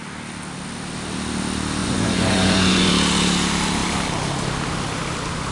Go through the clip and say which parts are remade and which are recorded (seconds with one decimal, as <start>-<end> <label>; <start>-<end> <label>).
0.0-1.8 recorded; 1.8-2.9 remade; 2.9-5.5 recorded

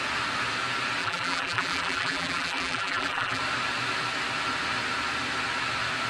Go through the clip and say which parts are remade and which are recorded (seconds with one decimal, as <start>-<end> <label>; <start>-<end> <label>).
0.0-1.0 recorded; 1.0-3.4 remade; 3.4-6.1 recorded

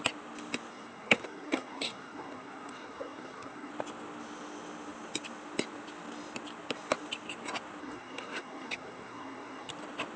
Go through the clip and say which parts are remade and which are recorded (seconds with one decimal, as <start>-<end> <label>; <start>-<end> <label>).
0.0-0.7 recorded; 0.7-3.7 remade; 3.7-7.8 recorded; 7.8-9.7 remade; 9.7-10.2 recorded

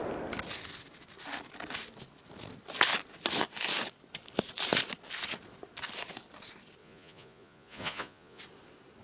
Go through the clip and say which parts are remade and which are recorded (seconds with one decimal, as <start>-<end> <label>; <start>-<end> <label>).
0.0-6.8 recorded; 6.8-8.4 remade; 8.4-9.0 recorded

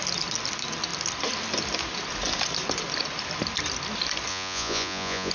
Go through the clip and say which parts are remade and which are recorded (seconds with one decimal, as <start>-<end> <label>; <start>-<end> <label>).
0.0-4.3 recorded; 4.3-5.3 remade

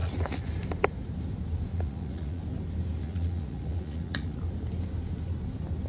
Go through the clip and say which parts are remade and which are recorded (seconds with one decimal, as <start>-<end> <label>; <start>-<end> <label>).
0.0-0.5 remade; 0.5-1.7 recorded; 1.7-2.4 remade; 2.4-3.0 recorded; 3.0-4.4 remade; 4.4-5.9 recorded

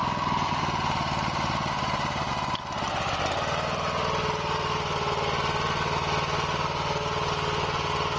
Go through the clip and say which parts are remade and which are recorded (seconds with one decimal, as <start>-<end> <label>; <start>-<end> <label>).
0.0-2.3 remade; 2.3-8.2 recorded

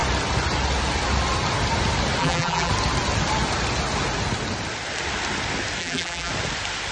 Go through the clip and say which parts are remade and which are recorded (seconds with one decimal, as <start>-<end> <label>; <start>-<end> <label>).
0.0-2.2 recorded; 2.2-2.7 remade; 2.7-5.8 recorded; 5.8-6.3 remade; 6.3-6.9 recorded